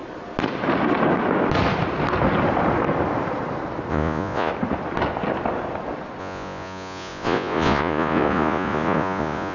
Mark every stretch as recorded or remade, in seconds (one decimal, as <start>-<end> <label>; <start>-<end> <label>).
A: 0.0-3.9 recorded; 3.9-4.5 remade; 4.5-6.2 recorded; 6.2-9.5 remade